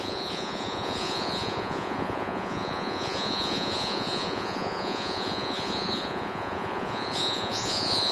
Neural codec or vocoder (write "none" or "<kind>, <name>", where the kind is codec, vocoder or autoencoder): vocoder, Vocos